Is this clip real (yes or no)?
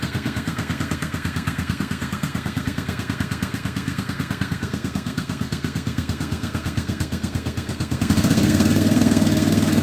no